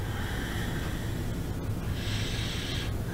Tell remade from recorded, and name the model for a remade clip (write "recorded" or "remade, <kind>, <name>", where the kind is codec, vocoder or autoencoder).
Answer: recorded